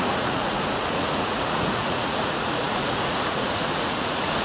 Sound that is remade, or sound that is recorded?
remade